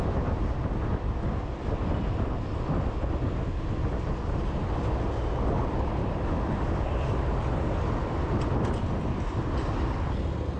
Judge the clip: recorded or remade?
recorded